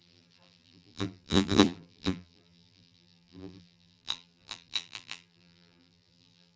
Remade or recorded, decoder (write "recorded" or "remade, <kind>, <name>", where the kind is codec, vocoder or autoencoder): remade, vocoder, BigVGAN v2